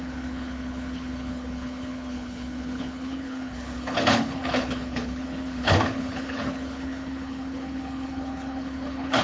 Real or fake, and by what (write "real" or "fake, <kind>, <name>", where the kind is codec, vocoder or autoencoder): fake, codec, HILCodec